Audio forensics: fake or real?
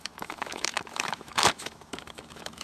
fake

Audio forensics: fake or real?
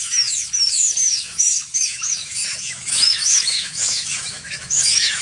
fake